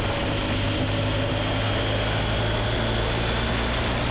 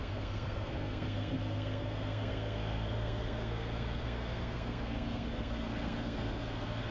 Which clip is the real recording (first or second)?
first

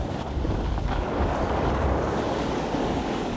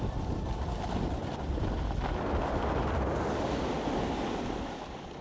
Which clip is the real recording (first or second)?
second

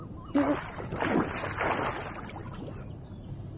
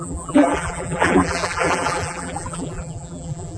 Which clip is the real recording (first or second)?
first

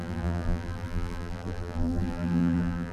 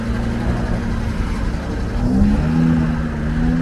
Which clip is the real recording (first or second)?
second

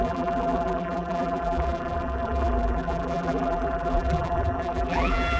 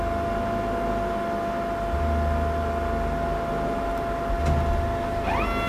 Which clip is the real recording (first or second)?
second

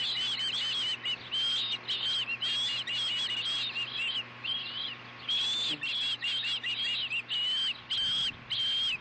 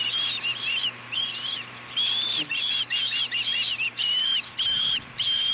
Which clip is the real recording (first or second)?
first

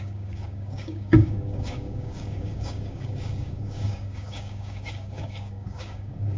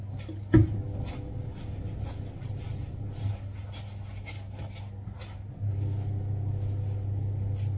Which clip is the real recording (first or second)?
second